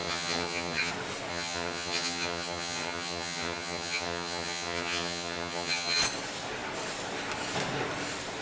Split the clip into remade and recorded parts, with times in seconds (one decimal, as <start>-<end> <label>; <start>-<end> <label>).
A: 0.0-0.9 remade; 0.9-1.3 recorded; 1.3-6.0 remade; 6.0-8.4 recorded